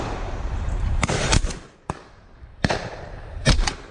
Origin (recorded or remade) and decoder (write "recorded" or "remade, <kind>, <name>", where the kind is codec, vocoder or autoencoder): remade, vocoder, BigVGAN v2